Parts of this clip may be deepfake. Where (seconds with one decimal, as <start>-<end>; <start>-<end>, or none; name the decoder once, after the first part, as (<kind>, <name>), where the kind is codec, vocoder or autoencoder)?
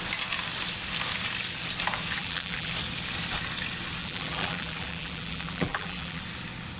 2.2-2.7 (vocoder, BigVGAN v2); 4.0-6.2